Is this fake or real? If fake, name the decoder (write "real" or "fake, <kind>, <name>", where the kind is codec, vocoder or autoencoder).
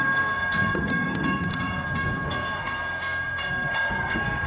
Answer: fake, codec, SNAC